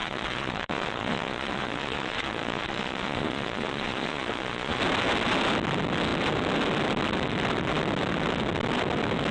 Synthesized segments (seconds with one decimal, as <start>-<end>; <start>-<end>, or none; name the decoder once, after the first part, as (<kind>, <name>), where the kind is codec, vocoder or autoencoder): 0.0-4.8 (vocoder, Vocos)